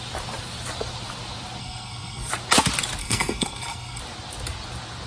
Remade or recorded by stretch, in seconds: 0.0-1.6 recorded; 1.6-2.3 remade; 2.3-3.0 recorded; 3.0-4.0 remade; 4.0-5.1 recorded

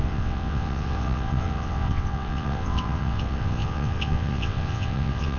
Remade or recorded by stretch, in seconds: 0.0-5.4 remade

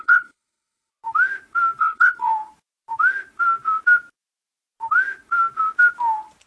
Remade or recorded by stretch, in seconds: 0.0-0.9 remade; 0.9-1.8 recorded; 1.8-2.3 remade; 2.3-6.5 recorded

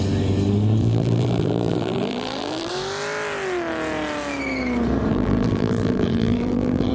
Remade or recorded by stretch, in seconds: 0.0-0.8 recorded; 0.8-2.7 remade; 2.7-5.1 recorded; 5.1-6.9 remade